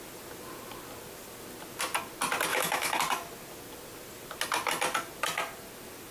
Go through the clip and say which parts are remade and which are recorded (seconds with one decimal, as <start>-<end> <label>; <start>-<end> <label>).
0.0-2.5 recorded; 2.5-3.0 remade; 3.0-6.1 recorded